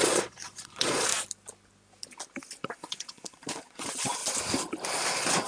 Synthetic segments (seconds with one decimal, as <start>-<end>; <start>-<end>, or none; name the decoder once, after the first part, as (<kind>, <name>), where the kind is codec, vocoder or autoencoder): 0.0-1.1 (vocoder, Vocos); 2.6-4.2; 4.9-5.5